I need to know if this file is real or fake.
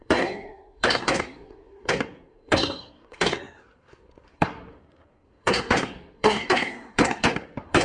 fake